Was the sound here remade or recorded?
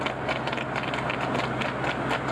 recorded